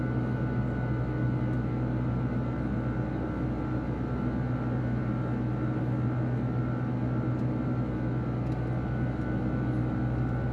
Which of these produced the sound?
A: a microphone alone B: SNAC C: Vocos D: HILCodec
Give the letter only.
A